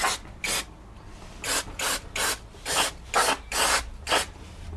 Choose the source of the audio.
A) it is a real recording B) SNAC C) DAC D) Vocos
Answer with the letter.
A